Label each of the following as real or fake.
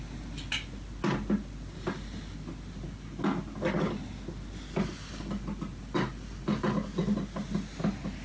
real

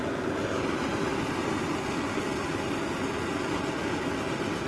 real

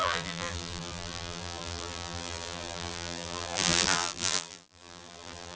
fake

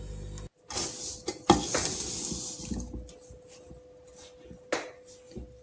real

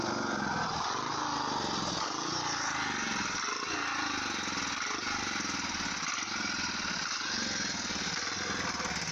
real